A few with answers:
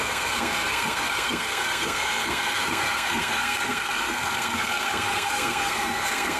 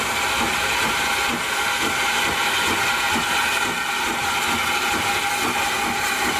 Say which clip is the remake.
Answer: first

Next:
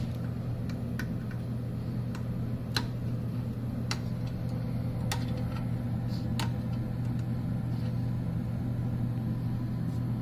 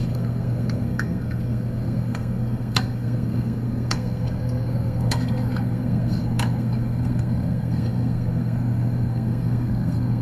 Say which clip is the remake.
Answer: second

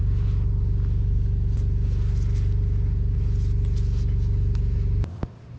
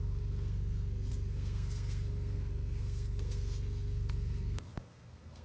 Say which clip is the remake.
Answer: second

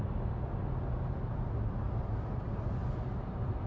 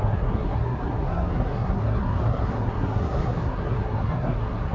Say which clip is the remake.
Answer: second